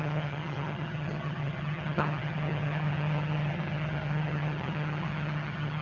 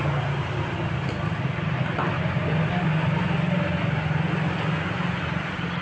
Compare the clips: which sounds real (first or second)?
second